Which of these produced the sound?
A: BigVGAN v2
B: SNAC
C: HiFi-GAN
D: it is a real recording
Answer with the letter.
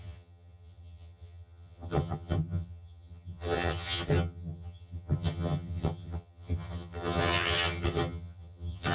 C